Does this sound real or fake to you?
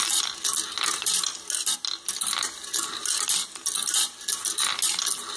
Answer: real